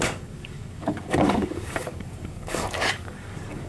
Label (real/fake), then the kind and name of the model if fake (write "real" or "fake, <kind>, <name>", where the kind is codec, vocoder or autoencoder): fake, codec, DAC